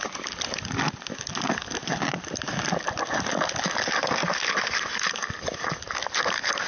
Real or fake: real